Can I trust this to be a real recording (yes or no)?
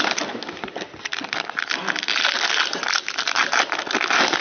yes